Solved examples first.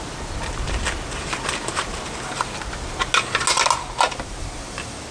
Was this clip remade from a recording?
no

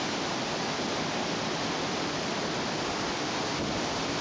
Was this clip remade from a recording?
no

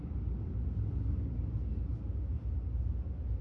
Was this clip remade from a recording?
no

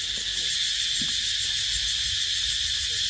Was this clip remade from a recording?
no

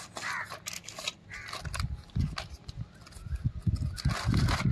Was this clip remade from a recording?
no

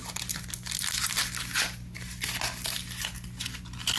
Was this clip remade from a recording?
no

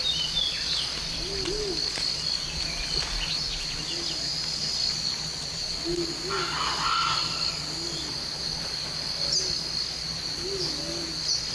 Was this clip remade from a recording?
no